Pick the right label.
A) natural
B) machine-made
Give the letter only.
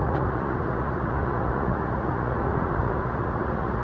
B